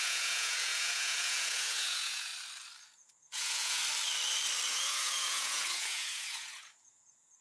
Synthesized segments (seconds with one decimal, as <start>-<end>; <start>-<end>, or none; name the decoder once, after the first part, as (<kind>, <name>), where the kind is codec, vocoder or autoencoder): 0.0-2.3 (vocoder, Vocos); 2.9-3.8; 4.7-7.4